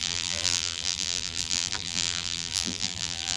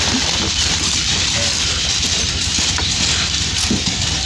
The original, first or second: second